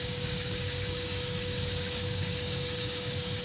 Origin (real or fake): fake